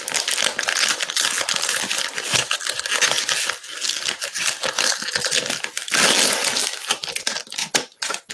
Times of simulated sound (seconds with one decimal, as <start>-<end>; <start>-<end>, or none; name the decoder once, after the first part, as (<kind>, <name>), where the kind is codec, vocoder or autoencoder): 7.6-8.3 (vocoder, WaveNeXt)